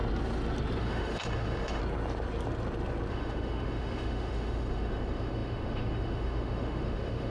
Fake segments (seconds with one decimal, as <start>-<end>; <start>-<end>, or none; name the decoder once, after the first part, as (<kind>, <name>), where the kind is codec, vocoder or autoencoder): 0.8-1.8 (autoencoder, DAC-VAE); 3.1-7.3